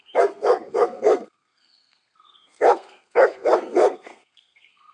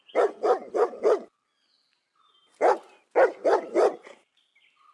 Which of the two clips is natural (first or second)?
second